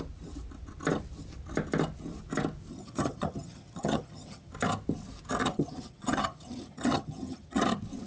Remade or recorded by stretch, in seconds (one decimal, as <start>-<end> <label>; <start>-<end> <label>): 0.0-2.7 recorded; 2.7-4.5 remade; 4.5-5.4 recorded; 5.4-7.6 remade; 7.6-8.1 recorded